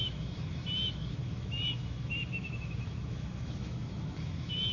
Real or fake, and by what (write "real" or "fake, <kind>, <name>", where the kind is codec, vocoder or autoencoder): fake, autoencoder, DAC-VAE